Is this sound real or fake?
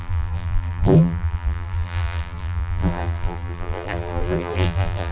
fake